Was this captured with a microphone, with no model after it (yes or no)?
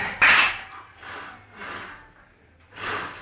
yes